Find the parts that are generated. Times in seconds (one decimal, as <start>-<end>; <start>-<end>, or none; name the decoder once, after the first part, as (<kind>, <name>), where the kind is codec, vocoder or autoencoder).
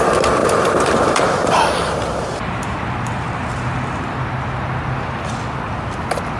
0.4-4.2 (vocoder, BigVGAN v2)